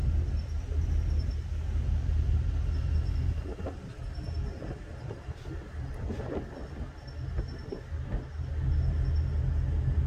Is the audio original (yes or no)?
yes